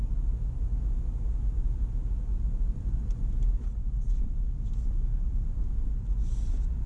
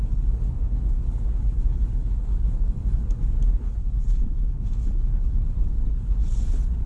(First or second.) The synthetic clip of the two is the second